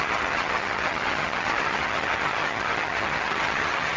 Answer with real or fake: fake